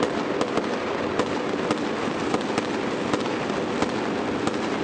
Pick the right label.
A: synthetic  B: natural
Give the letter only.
B